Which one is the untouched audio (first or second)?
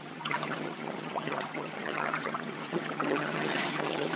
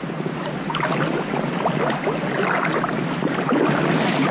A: second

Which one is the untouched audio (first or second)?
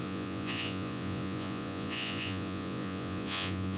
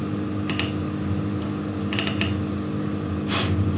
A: second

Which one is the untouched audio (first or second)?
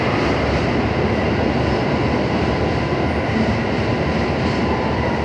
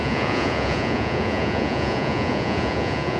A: first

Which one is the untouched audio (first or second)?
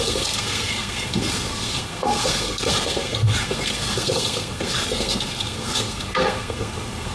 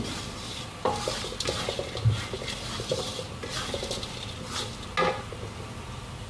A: second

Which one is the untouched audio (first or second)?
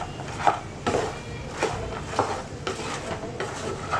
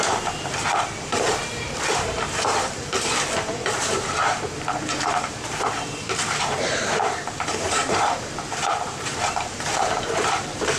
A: first